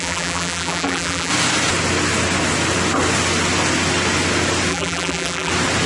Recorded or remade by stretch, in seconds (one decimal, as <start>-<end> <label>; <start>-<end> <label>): 0.0-1.3 remade; 1.3-4.7 recorded; 4.7-5.5 remade; 5.5-5.9 recorded